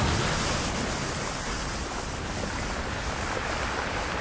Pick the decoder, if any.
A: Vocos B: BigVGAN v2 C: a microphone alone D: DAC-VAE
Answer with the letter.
C